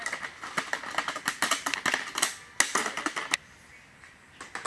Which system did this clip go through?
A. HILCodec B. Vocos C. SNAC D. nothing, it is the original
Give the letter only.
D